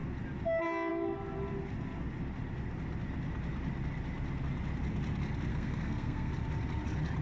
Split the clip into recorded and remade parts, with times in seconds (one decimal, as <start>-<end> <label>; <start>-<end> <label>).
0.0-5.5 recorded; 5.5-6.3 remade; 6.3-7.2 recorded